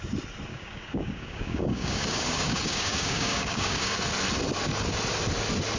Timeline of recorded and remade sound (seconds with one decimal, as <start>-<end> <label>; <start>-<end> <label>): 0.0-0.5 recorded; 0.5-4.0 remade; 4.0-5.8 recorded